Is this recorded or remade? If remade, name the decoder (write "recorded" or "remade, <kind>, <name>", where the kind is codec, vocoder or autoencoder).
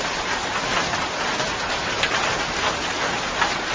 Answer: recorded